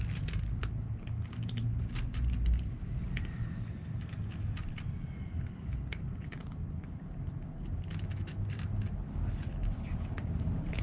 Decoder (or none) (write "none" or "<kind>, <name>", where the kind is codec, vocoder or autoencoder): none